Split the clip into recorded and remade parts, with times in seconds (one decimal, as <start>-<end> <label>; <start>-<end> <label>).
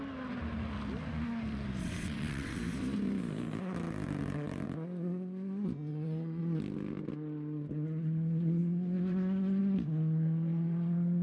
0.0-1.8 recorded; 1.8-2.6 remade; 2.6-5.9 recorded; 5.9-6.4 remade; 6.4-11.2 recorded